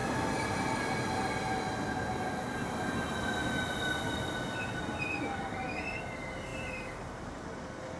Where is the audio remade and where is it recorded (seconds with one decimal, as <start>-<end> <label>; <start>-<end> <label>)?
0.0-6.5 recorded; 6.5-7.4 remade; 7.4-8.0 recorded